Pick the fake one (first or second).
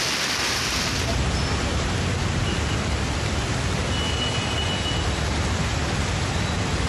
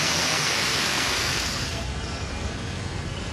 second